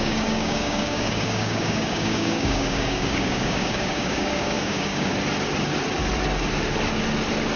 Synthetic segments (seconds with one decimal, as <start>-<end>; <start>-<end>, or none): 0.0-5.1